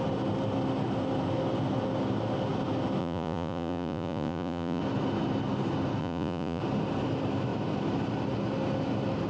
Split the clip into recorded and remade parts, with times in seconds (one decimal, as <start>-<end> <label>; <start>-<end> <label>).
0.0-3.0 recorded; 3.0-4.8 remade; 4.8-6.0 recorded; 6.0-6.6 remade; 6.6-9.3 recorded